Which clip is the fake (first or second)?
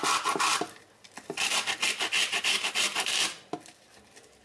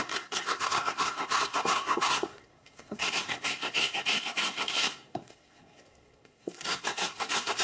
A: second